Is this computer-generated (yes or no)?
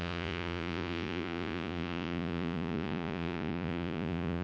yes